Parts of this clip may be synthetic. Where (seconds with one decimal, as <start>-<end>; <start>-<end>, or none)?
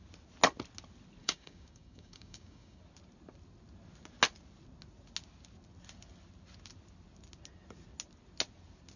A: 1.2-2.8